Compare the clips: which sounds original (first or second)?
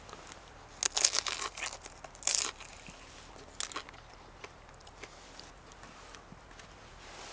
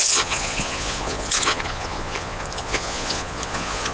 first